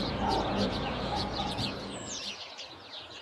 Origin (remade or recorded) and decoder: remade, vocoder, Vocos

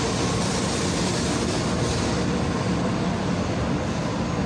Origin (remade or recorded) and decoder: recorded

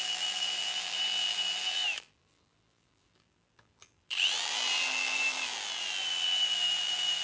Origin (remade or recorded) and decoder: remade, vocoder, BigVGAN v2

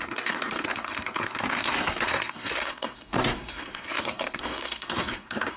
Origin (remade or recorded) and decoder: remade, codec, SNAC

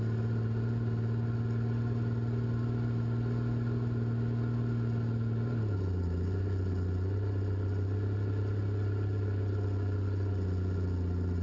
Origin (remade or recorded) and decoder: recorded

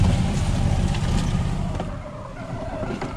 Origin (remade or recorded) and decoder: recorded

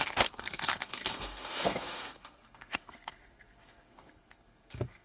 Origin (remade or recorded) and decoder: remade, codec, SNAC